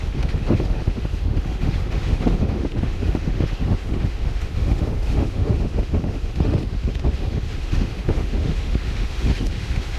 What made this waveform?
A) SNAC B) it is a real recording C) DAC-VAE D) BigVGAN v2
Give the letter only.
C